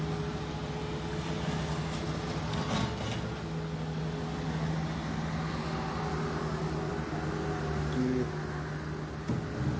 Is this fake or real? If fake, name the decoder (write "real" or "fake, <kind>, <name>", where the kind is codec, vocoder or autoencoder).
real